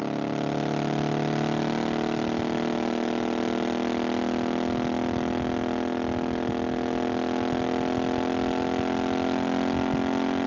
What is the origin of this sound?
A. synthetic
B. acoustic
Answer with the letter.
B